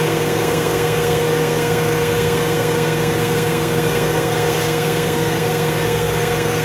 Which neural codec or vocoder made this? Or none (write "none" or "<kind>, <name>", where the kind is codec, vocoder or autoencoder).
codec, SNAC